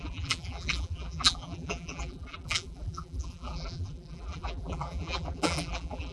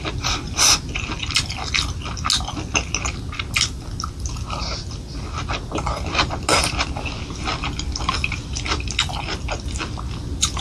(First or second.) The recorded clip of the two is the second